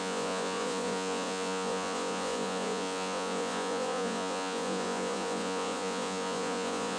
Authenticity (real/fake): fake